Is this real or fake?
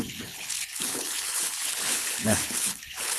fake